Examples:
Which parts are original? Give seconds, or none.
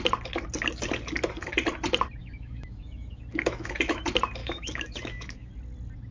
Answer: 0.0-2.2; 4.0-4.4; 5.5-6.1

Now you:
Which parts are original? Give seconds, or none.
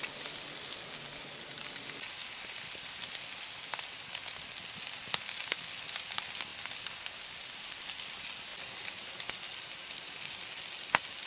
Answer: 0.0-11.3